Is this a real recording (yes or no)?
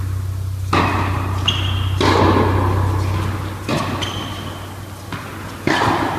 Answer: yes